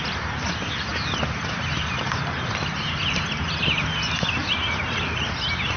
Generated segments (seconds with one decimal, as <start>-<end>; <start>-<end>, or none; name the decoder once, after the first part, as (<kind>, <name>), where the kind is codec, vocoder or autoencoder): 0.9-4.4 (vocoder, BigVGAN v2)